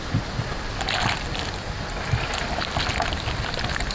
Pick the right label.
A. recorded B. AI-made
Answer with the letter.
A